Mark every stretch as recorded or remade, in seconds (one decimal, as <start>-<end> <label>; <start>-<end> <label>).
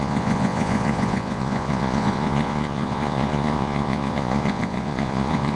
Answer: 0.0-5.6 remade